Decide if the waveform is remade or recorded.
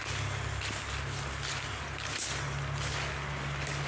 recorded